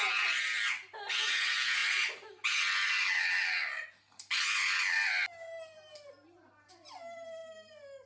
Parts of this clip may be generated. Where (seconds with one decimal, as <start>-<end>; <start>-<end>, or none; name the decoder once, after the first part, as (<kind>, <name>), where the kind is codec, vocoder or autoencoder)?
none